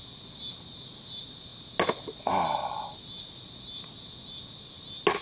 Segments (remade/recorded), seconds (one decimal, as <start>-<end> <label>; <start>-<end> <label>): 0.0-5.2 recorded